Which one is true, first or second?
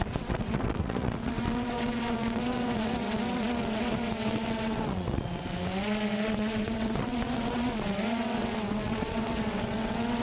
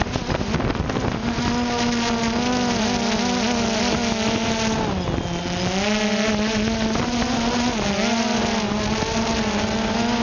second